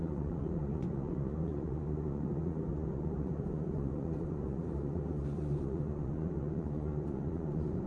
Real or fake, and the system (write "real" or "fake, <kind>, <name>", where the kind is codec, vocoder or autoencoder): fake, vocoder, Vocos